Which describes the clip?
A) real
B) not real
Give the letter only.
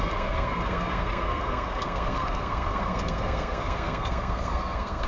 B